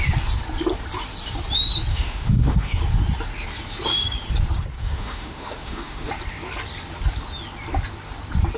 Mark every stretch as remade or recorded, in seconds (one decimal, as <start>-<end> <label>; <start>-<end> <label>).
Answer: 0.0-1.9 recorded; 1.9-2.8 remade; 2.8-4.8 recorded; 4.8-6.1 remade; 6.1-8.6 recorded